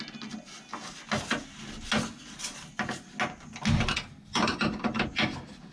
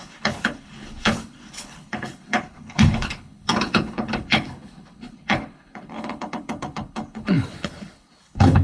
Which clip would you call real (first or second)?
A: first